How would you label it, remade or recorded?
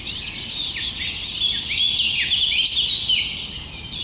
recorded